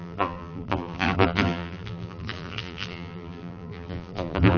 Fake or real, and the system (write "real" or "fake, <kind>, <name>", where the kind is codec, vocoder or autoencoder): fake, vocoder, BigVGAN v2